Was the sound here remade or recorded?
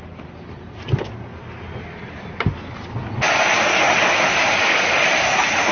recorded